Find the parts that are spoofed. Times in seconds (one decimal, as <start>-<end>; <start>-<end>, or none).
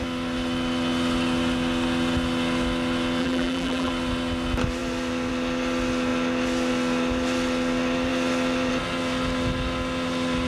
3.2-3.9